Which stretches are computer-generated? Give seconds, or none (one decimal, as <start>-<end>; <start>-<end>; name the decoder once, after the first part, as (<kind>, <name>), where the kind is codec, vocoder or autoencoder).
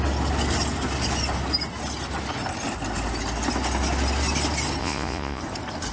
4.8-5.4 (vocoder, Vocos)